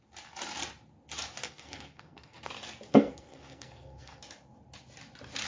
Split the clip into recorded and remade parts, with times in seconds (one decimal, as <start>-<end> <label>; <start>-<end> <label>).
0.0-1.4 recorded; 1.4-2.5 remade; 2.5-2.9 recorded; 2.9-4.2 remade; 4.2-5.5 recorded